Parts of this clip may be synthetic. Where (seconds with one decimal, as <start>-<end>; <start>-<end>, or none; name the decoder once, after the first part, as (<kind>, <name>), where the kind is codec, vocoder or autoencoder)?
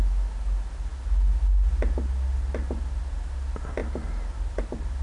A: none